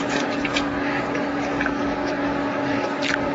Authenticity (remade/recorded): remade